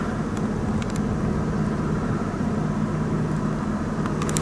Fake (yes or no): no